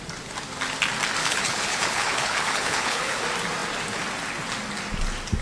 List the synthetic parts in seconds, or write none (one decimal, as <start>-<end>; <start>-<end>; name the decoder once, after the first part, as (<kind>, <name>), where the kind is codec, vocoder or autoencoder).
1.2-3.2 (codec, HILCodec)